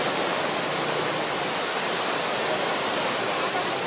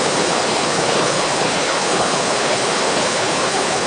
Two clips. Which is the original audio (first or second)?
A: first